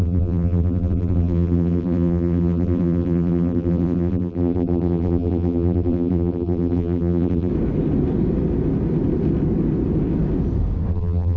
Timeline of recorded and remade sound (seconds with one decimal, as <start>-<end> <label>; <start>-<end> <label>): 0.0-7.5 remade; 7.5-10.9 recorded; 10.9-11.4 remade